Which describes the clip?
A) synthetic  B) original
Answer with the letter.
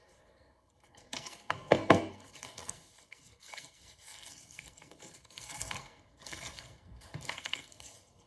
A